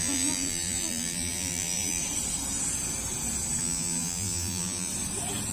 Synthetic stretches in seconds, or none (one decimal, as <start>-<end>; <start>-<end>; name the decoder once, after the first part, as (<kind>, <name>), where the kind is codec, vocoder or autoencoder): 0.0-2.0 (vocoder, BigVGAN v2); 3.6-4.9